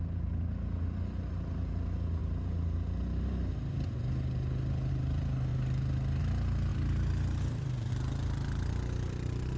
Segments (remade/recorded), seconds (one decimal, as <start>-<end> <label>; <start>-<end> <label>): 0.0-6.7 recorded; 6.7-7.9 remade; 7.9-9.6 recorded